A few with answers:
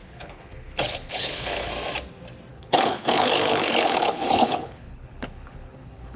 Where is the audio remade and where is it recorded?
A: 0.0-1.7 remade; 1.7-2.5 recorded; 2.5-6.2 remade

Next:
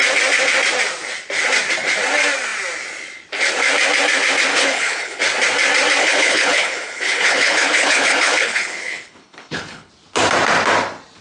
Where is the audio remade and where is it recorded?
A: 0.0-4.5 recorded; 4.5-5.2 remade; 5.2-6.0 recorded; 6.0-9.9 remade; 9.9-11.2 recorded

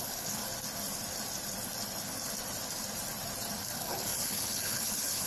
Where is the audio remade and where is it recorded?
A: 0.0-0.4 remade; 0.4-3.6 recorded; 3.6-5.3 remade

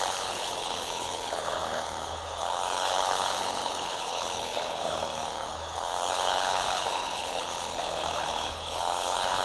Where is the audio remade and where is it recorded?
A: 0.0-9.4 remade

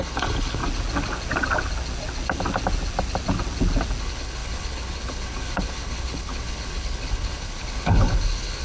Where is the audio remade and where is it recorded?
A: 0.0-0.6 remade; 0.6-4.0 recorded; 4.0-8.6 remade